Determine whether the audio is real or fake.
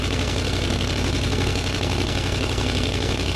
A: fake